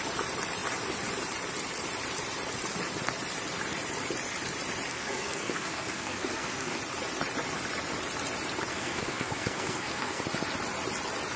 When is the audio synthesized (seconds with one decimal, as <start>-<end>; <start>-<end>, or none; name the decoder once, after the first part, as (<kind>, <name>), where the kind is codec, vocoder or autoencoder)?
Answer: 4.9-6.8 (codec, SNAC); 8.7-10.2